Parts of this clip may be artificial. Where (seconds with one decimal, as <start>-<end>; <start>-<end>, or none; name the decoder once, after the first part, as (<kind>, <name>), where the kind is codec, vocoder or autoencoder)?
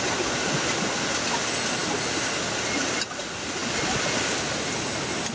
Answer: none